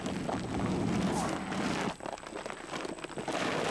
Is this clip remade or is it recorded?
recorded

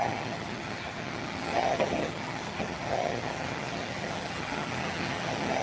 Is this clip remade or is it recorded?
remade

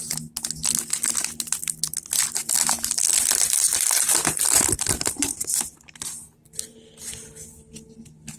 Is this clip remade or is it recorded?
recorded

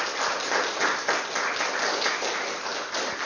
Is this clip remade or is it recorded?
recorded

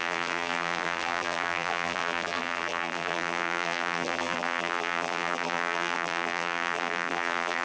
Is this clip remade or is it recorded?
remade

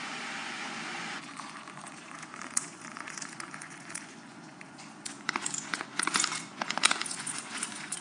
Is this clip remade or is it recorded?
remade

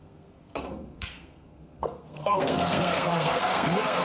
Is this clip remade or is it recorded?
remade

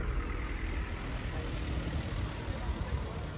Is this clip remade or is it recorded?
recorded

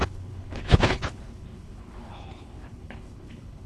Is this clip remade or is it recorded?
remade